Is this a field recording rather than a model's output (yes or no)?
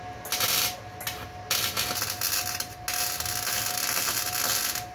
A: yes